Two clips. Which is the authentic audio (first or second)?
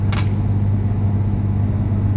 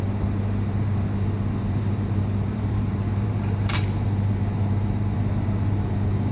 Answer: first